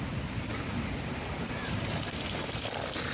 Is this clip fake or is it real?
fake